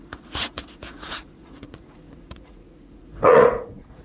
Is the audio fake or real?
fake